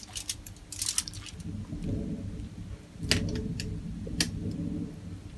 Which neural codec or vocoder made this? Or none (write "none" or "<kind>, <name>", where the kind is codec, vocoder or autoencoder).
none